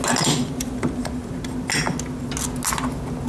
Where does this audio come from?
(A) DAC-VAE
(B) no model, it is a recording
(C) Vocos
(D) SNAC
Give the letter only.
B